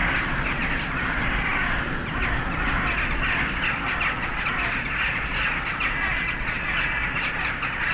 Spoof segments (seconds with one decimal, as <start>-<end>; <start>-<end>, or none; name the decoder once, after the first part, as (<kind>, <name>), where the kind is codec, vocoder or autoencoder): none